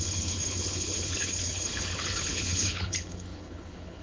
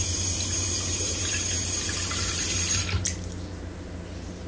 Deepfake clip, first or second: first